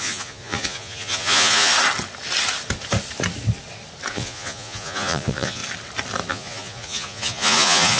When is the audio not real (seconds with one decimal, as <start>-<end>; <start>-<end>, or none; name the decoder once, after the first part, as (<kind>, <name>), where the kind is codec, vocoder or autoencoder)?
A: 0.0-1.7 (vocoder, Vocos); 4.1-5.6; 6.3-8.0